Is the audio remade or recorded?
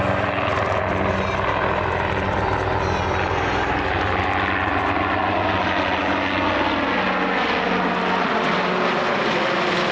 recorded